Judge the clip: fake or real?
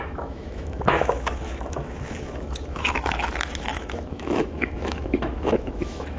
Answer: fake